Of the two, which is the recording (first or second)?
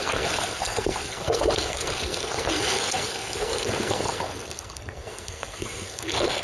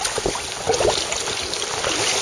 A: second